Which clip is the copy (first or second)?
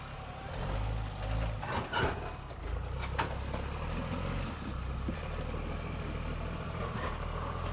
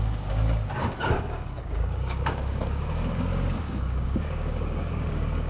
second